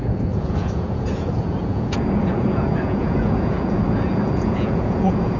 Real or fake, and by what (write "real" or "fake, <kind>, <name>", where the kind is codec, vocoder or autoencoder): fake, vocoder, Vocos